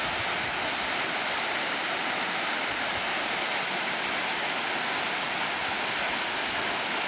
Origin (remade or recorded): recorded